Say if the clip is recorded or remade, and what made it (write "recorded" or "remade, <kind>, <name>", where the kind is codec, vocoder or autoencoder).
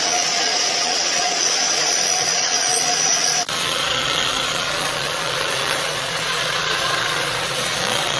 remade, vocoder, Vocos